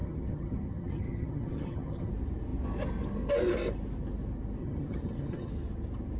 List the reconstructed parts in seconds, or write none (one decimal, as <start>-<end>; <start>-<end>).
0.0-2.1; 4.6-5.5